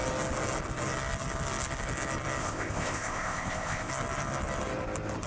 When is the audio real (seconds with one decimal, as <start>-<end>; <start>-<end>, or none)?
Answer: 0.0-2.4; 3.9-5.3

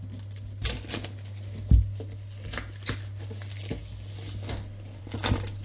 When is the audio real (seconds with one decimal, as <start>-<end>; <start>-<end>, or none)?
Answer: 0.0-5.6